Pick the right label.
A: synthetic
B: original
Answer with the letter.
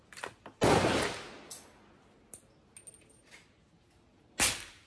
B